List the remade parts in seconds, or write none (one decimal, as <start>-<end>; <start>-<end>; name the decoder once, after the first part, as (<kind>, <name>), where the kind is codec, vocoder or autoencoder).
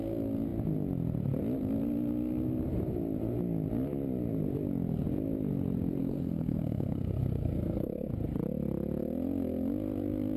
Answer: 6.0-8.1 (codec, SNAC)